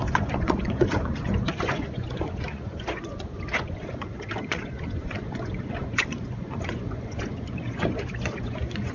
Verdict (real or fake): fake